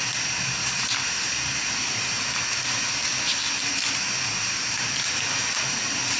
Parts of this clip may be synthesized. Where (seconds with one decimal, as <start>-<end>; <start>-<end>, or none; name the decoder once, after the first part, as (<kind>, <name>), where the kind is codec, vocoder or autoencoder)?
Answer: none